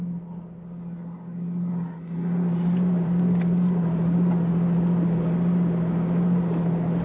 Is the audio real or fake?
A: real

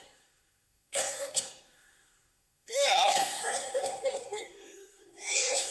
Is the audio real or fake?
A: fake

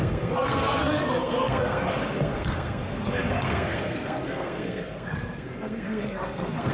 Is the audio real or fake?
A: fake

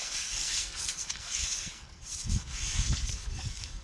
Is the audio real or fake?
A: fake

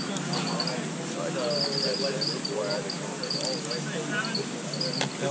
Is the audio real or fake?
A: real